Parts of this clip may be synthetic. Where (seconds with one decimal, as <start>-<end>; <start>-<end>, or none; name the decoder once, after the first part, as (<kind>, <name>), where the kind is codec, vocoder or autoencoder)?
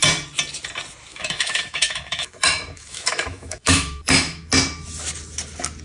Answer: 1.1-4.5 (autoencoder, DAC-VAE)